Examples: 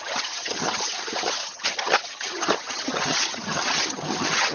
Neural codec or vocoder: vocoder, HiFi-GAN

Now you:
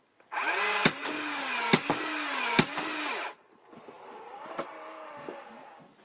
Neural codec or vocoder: none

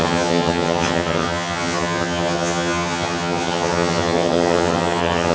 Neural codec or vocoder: vocoder, HiFi-GAN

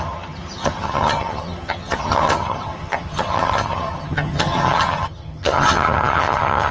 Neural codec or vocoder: vocoder, HiFi-GAN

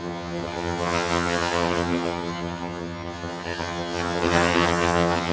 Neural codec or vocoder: vocoder, HiFi-GAN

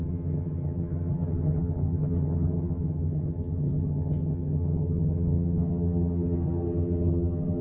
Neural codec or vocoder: vocoder, HiFi-GAN